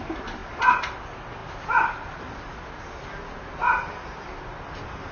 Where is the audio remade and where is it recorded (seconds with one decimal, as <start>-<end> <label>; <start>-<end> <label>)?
0.0-5.1 recorded